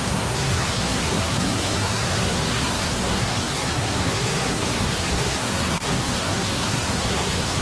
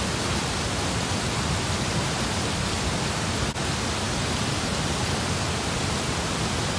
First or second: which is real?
second